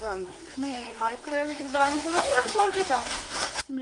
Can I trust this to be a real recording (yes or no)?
no